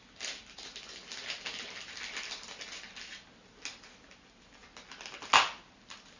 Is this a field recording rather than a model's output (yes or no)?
yes